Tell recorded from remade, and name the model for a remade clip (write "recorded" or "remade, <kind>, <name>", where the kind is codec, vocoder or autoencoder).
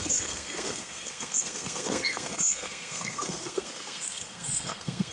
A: remade, codec, SNAC